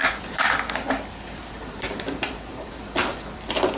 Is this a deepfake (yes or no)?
yes